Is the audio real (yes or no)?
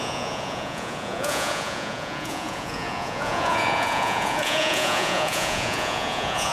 no